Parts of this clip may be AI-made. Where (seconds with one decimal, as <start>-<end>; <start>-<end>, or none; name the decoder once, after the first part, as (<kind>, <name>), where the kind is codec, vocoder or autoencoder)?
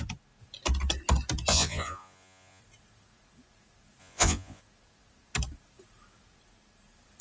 1.5-2.6 (vocoder, Vocos); 4.0-4.6